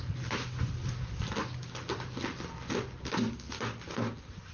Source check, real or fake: real